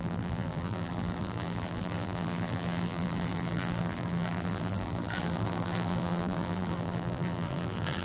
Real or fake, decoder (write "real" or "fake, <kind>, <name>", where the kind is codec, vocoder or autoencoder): fake, vocoder, BigVGAN v2